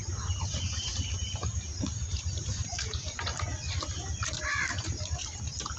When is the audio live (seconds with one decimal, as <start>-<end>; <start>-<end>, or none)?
3.3-4.2